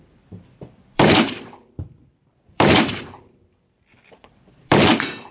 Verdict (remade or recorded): remade